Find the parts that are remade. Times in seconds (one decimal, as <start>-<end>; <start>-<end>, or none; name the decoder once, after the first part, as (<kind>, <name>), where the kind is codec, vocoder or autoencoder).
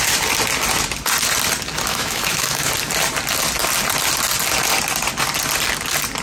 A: 1.9-2.7 (autoencoder, DAC-VAE)